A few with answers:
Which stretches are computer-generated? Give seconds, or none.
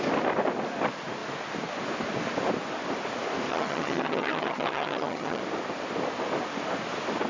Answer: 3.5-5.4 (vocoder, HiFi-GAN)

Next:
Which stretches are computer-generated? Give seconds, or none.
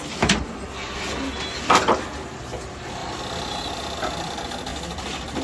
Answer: none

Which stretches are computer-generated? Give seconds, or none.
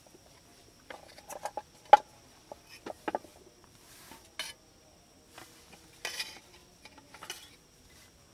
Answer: 0.5-1.2 (vocoder, BigVGAN v2)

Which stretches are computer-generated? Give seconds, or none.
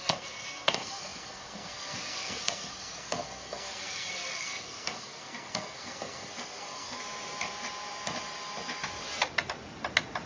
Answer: 0.0-7.0 (codec, SNAC)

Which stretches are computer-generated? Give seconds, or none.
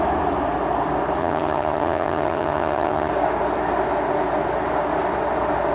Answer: 1.2-3.1 (vocoder, HiFi-GAN)